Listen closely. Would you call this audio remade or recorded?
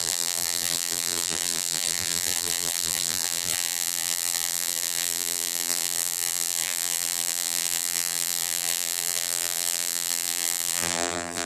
remade